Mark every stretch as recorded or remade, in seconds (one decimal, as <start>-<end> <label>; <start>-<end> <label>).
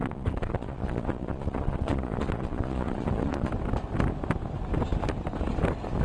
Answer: 0.0-3.5 remade; 3.5-6.0 recorded